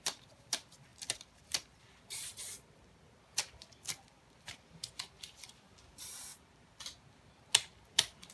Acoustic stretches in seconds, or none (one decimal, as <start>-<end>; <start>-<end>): 2.3-5.2; 6.3-8.3